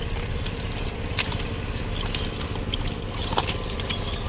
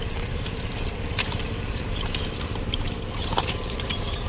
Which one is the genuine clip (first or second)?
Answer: first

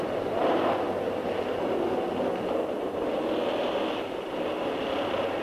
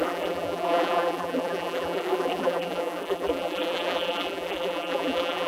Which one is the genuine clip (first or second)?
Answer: first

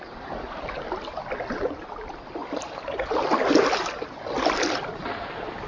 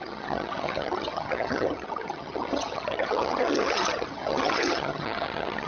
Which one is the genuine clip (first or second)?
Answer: first